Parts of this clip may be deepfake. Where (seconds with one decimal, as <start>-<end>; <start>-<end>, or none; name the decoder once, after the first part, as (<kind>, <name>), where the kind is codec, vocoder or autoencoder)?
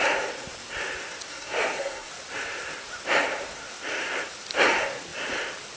1.3-2.1 (codec, SNAC)